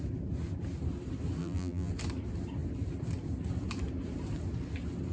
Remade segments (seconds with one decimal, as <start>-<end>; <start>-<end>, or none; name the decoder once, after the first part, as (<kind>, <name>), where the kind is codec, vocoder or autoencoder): 1.4-1.9 (vocoder, BigVGAN v2)